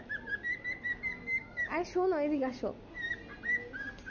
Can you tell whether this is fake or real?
real